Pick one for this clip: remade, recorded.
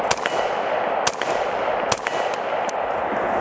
recorded